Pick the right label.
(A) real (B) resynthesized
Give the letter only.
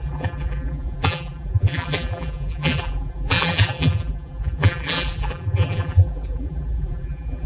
B